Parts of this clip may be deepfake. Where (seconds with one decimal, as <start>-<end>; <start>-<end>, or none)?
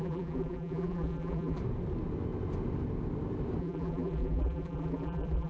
0.0-1.6; 3.6-5.5